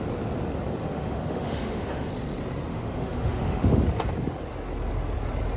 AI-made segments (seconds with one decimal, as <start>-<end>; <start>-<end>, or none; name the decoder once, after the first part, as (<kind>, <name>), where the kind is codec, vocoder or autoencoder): 0.8-2.1 (autoencoder, DAC-VAE); 2.7-3.8